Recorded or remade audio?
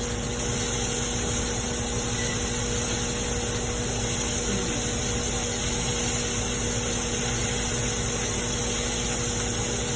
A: recorded